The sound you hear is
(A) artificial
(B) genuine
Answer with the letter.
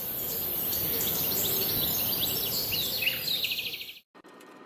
B